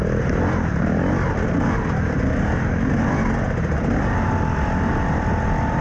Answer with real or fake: real